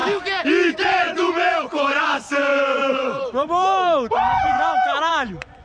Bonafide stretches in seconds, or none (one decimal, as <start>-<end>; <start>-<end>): 0.0-0.7